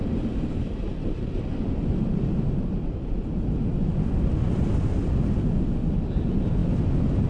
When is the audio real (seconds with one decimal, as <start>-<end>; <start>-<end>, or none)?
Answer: 0.0-7.3